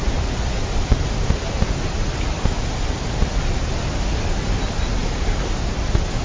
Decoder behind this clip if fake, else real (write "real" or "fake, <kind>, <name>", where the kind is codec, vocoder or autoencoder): real